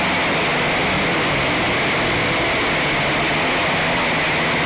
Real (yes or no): yes